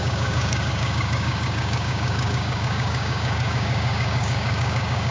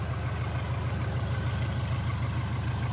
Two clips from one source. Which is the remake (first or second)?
first